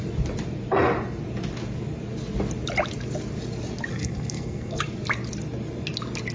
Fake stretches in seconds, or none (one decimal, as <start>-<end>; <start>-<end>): 3.9-4.8